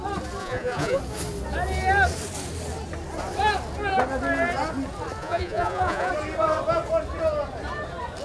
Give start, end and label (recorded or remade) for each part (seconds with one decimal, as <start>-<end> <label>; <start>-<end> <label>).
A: 0.0-0.4 recorded; 0.4-1.0 remade; 1.0-5.2 recorded; 5.2-6.1 remade; 6.1-8.2 recorded

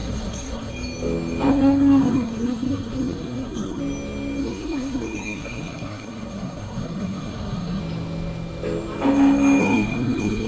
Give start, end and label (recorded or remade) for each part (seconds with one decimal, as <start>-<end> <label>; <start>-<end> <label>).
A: 0.0-0.7 remade; 0.7-1.5 recorded; 1.5-3.8 remade; 3.8-4.4 recorded; 4.4-7.8 remade; 7.8-9.6 recorded; 9.6-10.5 remade

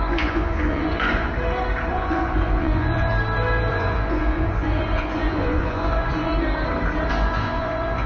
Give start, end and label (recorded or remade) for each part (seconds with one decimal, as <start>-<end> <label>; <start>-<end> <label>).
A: 0.0-1.3 remade; 1.3-1.9 recorded; 1.9-3.1 remade; 3.1-3.7 recorded; 3.7-6.3 remade; 6.3-7.1 recorded; 7.1-8.1 remade

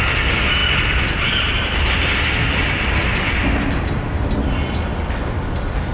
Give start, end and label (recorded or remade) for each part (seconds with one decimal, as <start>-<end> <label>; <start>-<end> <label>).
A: 0.0-5.9 recorded

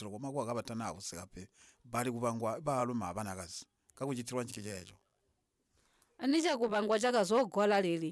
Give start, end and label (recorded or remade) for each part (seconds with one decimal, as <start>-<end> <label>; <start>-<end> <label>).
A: 0.0-4.5 recorded; 4.5-5.2 remade; 5.2-6.3 recorded; 6.3-7.1 remade; 7.1-8.1 recorded

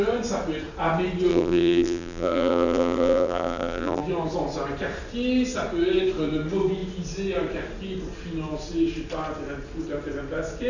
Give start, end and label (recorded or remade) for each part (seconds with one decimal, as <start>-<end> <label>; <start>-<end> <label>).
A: 0.0-1.3 recorded; 1.3-4.0 remade; 4.0-10.7 recorded